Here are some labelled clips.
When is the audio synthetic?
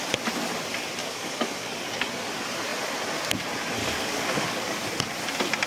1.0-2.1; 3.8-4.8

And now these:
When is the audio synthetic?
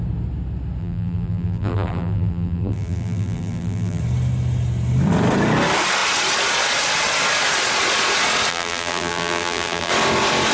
0.8-4.0; 8.5-9.9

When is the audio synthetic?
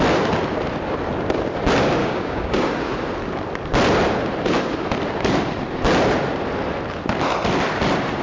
2.0-3.0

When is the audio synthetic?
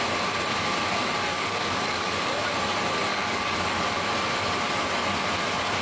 1.3-2.4; 3.1-3.9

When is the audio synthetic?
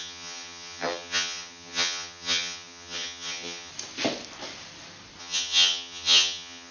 0.0-3.7; 5.2-6.7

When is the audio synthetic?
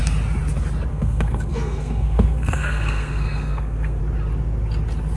0.9-4.0